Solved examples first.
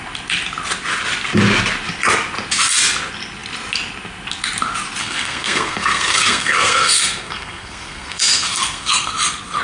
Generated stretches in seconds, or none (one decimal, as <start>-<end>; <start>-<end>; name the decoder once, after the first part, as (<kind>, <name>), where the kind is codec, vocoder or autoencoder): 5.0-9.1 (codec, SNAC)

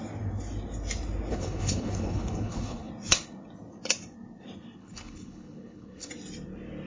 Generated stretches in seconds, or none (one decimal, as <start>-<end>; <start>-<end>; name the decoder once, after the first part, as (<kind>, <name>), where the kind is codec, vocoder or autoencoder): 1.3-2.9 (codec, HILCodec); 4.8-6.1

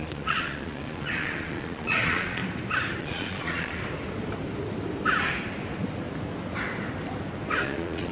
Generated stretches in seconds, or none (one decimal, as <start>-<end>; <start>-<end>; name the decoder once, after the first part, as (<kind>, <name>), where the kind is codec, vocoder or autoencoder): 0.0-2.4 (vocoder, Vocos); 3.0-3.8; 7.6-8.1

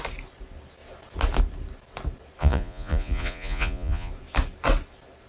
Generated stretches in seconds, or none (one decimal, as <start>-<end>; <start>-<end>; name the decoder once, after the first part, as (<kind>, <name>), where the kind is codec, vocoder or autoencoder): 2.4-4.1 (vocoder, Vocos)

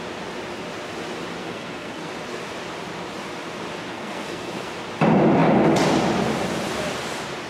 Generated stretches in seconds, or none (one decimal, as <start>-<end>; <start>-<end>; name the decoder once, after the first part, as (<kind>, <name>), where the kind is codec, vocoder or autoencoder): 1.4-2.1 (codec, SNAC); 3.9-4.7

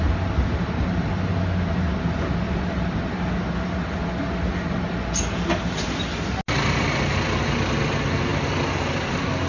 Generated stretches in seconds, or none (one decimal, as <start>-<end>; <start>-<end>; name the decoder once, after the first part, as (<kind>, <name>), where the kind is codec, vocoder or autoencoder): none

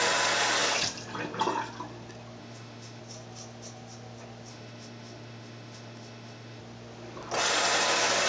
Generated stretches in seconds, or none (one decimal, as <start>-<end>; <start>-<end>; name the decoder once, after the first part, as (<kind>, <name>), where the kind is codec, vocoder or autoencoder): 2.4-3.0 (autoencoder, DAC-VAE); 4.5-6.6

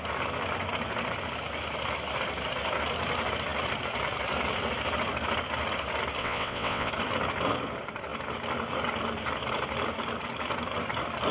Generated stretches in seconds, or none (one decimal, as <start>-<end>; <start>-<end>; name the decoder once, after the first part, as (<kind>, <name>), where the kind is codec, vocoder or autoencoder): 6.2-6.9 (vocoder, WaveNeXt)